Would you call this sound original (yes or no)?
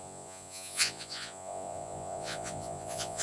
no